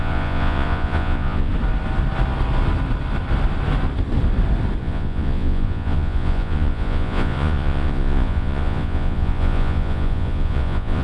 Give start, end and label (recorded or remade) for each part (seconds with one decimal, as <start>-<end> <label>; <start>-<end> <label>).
0.0-1.5 remade; 1.5-4.8 recorded; 4.8-11.0 remade